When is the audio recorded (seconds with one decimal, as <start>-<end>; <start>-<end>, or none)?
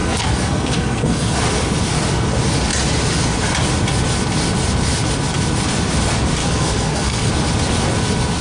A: 1.4-6.4; 7.3-8.4